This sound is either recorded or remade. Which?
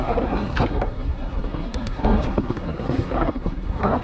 remade